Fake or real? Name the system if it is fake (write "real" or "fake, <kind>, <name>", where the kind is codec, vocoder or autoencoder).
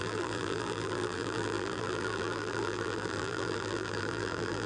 fake, vocoder, BigVGAN v2